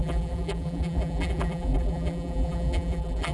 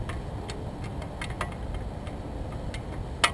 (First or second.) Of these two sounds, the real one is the second